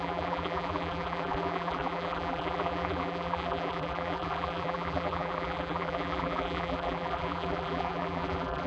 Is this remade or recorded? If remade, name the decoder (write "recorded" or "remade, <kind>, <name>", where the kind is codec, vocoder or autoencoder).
remade, vocoder, BigVGAN v2